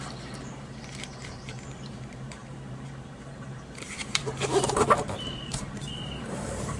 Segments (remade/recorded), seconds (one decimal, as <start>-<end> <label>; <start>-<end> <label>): 0.0-6.8 remade